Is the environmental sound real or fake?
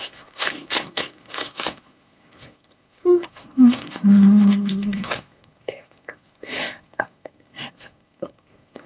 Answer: fake